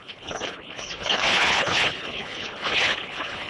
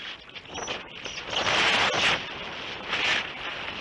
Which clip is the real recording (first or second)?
second